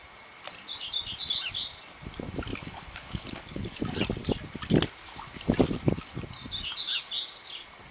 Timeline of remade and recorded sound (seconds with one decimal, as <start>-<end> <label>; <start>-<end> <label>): 0.0-2.5 recorded; 2.5-3.8 remade; 3.8-7.9 recorded